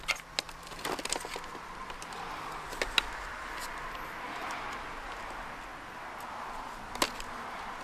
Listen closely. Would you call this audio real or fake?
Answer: real